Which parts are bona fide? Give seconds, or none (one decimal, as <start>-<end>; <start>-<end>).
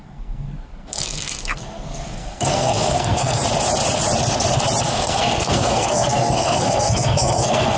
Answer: 3.4-4.8